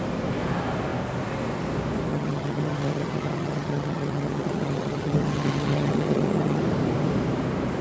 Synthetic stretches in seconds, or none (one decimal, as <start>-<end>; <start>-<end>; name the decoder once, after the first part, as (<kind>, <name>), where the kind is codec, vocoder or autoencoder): 2.1-6.6 (vocoder, HiFi-GAN)